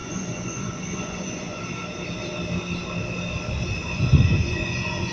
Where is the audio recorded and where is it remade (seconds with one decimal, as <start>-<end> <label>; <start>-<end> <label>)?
0.0-1.6 remade; 1.6-3.8 recorded; 3.8-5.1 remade